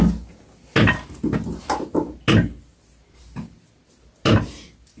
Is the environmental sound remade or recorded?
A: recorded